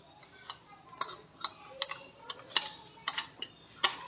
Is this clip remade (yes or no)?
no